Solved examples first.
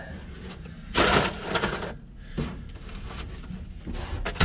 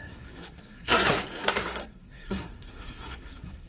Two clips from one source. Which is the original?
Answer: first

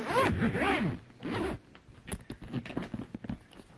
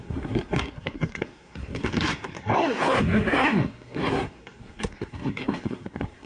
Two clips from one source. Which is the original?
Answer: first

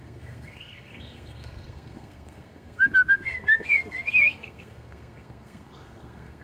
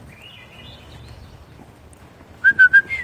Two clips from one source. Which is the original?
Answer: second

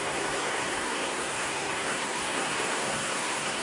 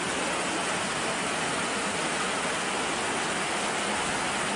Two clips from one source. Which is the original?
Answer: second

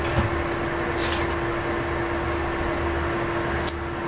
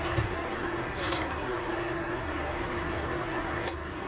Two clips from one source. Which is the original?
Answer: first